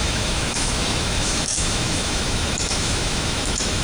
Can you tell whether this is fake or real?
fake